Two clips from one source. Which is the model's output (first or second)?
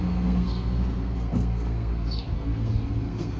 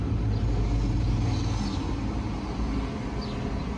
first